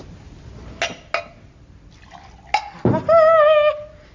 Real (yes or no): yes